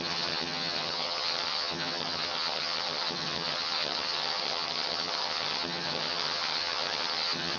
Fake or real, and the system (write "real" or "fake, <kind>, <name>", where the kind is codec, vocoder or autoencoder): fake, vocoder, HiFi-GAN